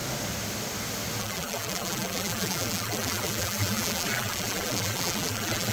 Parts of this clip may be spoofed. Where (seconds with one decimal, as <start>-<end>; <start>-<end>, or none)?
1.2-5.7